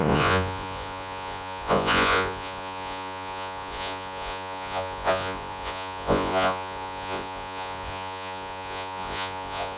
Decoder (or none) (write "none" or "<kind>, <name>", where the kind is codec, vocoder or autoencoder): vocoder, Vocos